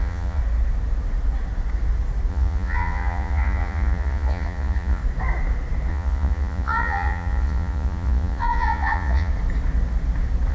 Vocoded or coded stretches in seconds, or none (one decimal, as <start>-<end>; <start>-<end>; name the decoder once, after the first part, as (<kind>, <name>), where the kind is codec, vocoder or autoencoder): 0.0-0.4 (vocoder, Vocos); 2.3-5.0; 5.9-9.3